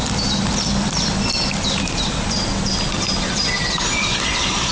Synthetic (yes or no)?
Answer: no